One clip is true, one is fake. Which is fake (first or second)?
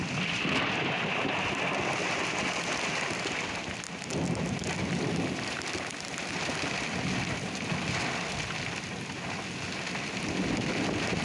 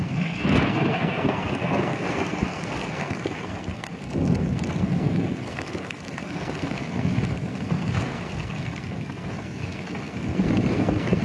second